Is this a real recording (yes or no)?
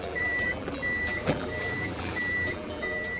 no